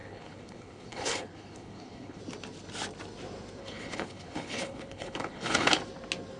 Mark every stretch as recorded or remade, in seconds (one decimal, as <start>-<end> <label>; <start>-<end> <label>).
0.0-2.2 remade; 2.2-3.6 recorded; 3.6-5.7 remade; 5.7-6.4 recorded